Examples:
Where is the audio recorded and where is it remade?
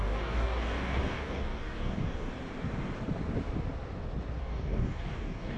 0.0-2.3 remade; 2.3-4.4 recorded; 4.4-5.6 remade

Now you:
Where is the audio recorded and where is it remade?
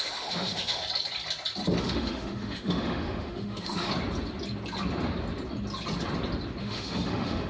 0.0-0.8 remade; 0.8-1.8 recorded; 1.8-3.9 remade; 3.9-6.6 recorded; 6.6-7.5 remade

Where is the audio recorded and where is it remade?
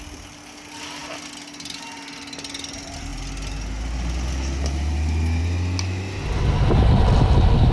0.0-7.7 recorded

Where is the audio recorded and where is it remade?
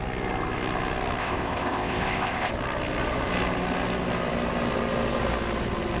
0.0-1.2 recorded; 1.2-2.5 remade; 2.5-6.0 recorded